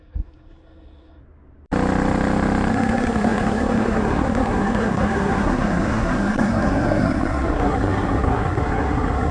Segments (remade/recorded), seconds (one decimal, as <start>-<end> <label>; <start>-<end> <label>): 0.0-1.2 remade; 1.2-2.7 recorded; 2.7-9.3 remade